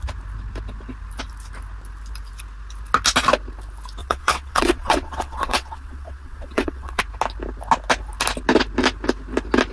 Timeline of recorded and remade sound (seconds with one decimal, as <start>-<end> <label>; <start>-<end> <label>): 0.0-4.0 recorded; 4.0-7.0 remade; 7.0-9.7 recorded